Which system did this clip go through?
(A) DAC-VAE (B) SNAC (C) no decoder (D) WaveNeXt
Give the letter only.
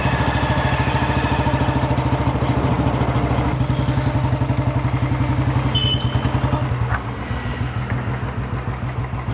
C